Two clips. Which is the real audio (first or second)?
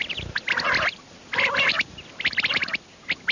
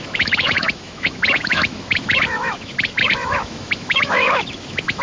first